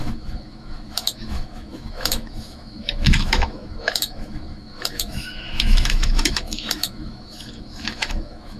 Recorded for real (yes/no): no